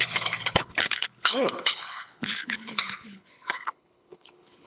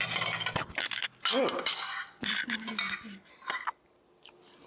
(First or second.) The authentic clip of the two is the second